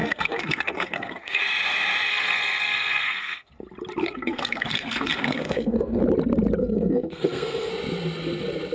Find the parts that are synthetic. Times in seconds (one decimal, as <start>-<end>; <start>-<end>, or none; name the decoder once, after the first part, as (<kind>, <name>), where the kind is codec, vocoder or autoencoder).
0.0-1.4 (codec, SNAC); 2.1-3.5; 4.0-6.0; 6.6-7.7